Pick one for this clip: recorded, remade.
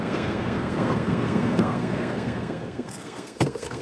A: remade